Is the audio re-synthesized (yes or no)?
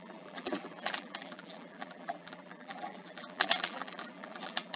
yes